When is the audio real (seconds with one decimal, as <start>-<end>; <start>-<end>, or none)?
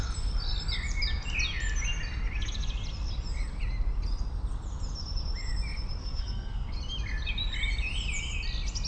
0.0-6.0; 6.7-8.9